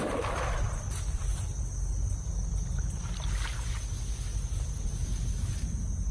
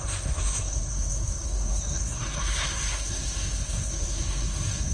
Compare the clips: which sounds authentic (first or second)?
first